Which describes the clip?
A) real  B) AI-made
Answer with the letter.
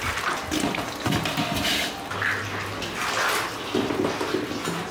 A